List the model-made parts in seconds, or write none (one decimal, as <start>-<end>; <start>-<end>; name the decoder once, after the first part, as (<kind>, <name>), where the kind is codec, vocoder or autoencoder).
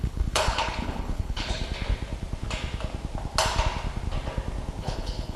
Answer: 0.0-1.6 (codec, HILCodec); 4.8-5.4